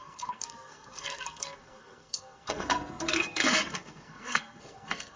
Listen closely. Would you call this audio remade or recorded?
remade